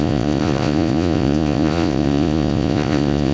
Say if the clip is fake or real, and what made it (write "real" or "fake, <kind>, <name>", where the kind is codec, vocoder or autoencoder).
fake, vocoder, Vocos